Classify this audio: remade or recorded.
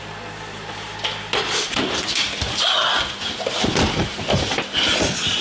recorded